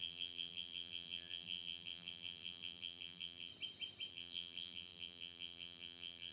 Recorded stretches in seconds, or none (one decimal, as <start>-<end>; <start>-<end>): 3.5-4.1